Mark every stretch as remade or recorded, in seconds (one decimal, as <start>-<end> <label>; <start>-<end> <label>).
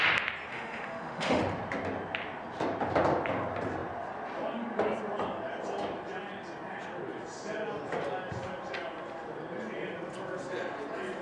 0.0-0.5 recorded; 0.5-1.4 remade; 1.4-11.2 recorded